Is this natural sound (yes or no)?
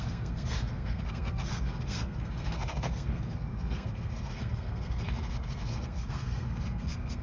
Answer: no